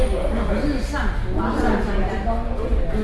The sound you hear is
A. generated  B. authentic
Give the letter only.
B